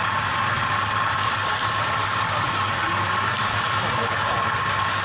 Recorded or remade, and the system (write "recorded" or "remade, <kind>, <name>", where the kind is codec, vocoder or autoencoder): recorded